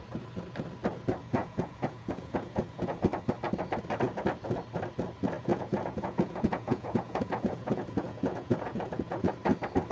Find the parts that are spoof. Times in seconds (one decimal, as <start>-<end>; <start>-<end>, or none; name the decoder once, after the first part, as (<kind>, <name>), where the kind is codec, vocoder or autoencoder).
1.4-3.0 (vocoder, Vocos); 5.4-9.3